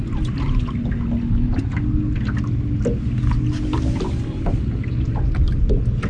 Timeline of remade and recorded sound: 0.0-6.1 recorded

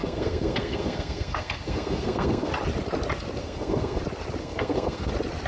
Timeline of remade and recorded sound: 0.0-2.5 remade; 2.5-3.4 recorded; 3.4-4.0 remade; 4.0-4.4 recorded; 4.4-5.1 remade; 5.1-5.5 recorded

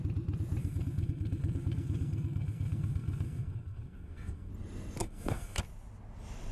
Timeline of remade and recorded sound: 0.0-0.6 recorded; 0.6-4.5 remade; 4.5-5.0 recorded; 5.0-5.6 remade; 5.6-6.5 recorded